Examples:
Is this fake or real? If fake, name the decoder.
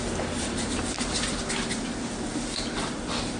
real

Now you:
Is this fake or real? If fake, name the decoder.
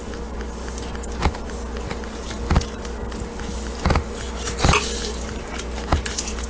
real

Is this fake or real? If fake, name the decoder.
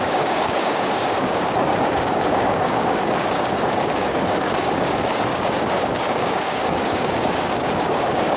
fake, codec, DAC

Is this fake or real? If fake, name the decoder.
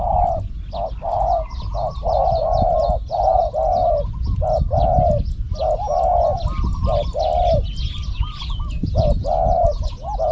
real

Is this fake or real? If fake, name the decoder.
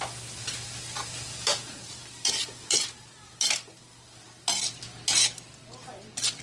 real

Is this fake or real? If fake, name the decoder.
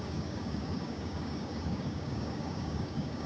fake, codec, DAC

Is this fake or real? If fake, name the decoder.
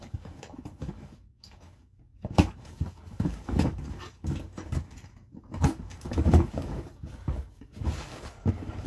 fake, codec, DAC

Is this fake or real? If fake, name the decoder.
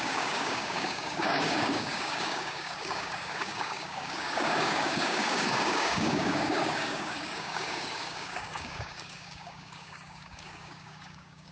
fake, codec, DAC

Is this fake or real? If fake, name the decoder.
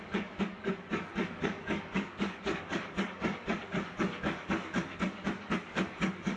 fake, codec, DAC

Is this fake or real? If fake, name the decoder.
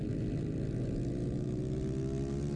real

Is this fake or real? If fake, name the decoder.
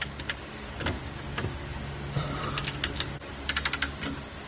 real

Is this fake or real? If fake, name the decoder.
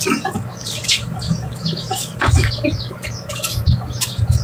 fake, codec, DAC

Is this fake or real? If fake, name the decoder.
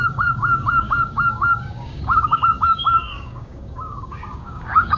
fake, codec, DAC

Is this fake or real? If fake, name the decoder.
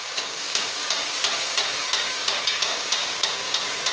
fake, codec, DAC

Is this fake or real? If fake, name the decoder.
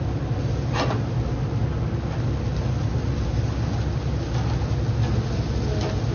real